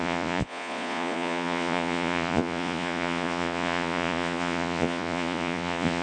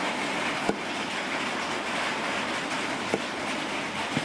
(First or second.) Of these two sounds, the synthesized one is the first